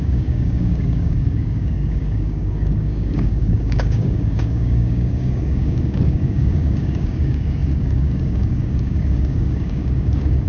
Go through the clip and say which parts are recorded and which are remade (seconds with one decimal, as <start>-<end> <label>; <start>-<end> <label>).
0.0-10.5 remade